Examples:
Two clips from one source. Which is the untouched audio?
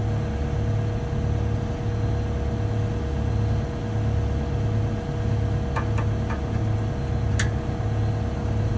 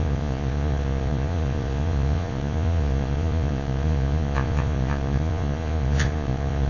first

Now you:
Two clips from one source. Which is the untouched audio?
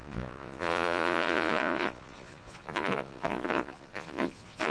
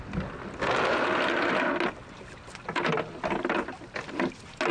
second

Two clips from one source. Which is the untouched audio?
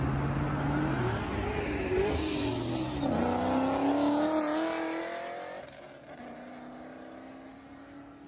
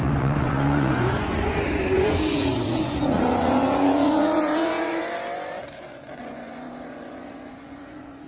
first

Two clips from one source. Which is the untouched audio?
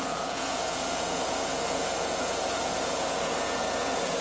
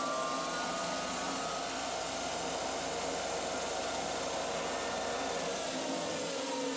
second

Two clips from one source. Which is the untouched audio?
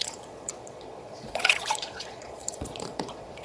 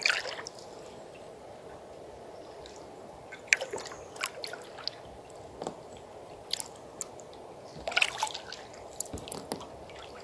second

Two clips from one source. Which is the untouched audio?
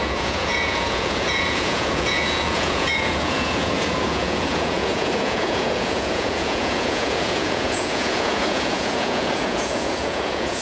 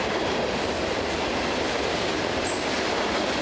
second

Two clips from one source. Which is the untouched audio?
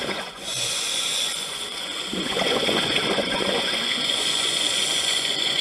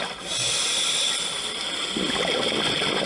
second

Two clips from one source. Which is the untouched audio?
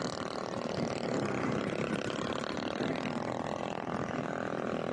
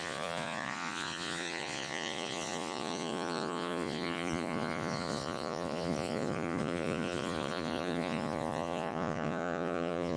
first